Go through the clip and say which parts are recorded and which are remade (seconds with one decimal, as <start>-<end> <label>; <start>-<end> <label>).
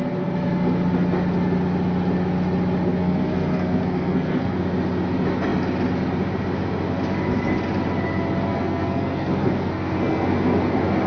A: 0.0-3.0 recorded; 3.0-4.6 remade; 4.6-8.5 recorded; 8.5-10.6 remade; 10.6-11.1 recorded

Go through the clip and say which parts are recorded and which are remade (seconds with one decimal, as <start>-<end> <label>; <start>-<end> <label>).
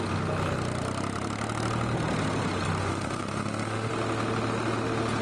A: 0.0-2.8 recorded; 2.8-3.9 remade; 3.9-5.2 recorded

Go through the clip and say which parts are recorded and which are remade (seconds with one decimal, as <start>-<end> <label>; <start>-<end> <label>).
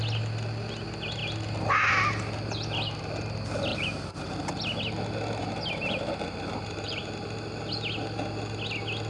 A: 0.0-3.7 recorded; 3.7-4.3 remade; 4.3-5.4 recorded; 5.4-7.0 remade; 7.0-9.1 recorded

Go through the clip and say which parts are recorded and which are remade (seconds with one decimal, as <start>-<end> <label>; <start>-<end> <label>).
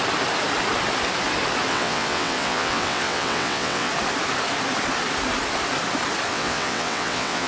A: 0.0-1.7 recorded; 1.7-3.9 remade; 3.9-6.3 recorded; 6.3-7.5 remade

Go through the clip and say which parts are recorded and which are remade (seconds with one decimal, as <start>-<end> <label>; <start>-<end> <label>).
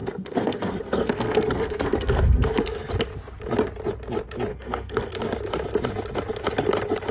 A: 0.0-2.9 remade; 2.9-4.5 recorded; 4.5-5.1 remade; 5.1-7.1 recorded